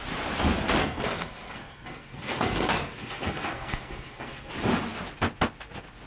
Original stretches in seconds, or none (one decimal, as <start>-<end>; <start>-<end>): 0.0-0.8; 4.5-6.1